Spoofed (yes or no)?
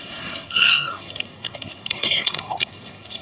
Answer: yes